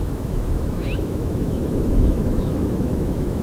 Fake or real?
fake